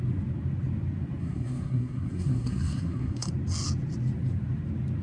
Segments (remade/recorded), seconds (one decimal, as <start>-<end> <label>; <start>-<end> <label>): 0.0-1.2 recorded; 1.2-3.3 remade; 3.3-5.0 recorded